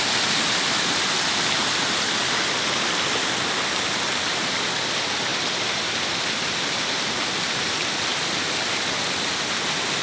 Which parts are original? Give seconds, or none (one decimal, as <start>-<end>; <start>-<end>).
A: 0.0-10.0